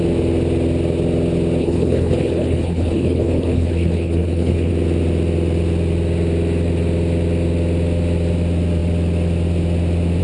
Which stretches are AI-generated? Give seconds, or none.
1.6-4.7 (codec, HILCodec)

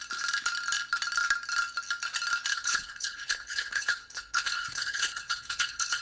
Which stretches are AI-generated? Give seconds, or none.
2.5-6.0 (codec, HILCodec)

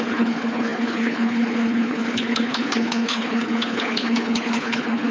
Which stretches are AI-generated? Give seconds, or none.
0.0-5.1 (codec, HILCodec)

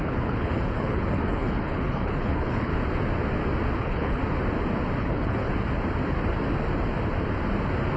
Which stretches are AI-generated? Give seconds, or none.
0.0-2.7 (codec, HILCodec); 3.8-4.2; 5.0-5.5